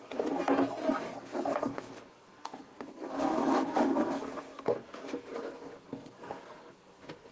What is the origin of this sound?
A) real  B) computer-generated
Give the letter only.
B